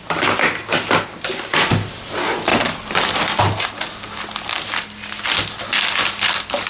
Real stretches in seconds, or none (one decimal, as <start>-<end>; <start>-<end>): 0.0-6.7